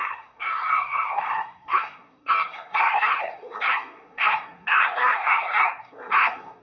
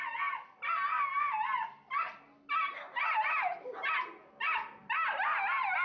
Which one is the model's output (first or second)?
first